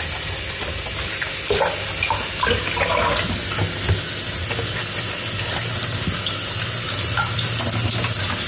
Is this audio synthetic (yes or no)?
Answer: no